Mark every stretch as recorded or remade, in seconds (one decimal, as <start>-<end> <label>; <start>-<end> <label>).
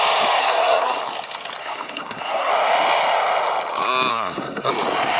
0.0-0.4 recorded; 0.4-1.0 remade; 1.0-1.6 recorded; 1.6-2.5 remade; 2.5-4.1 recorded; 4.1-4.7 remade; 4.7-5.2 recorded